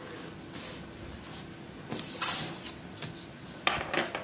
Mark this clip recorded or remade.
recorded